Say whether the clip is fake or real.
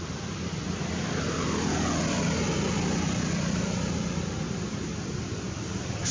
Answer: real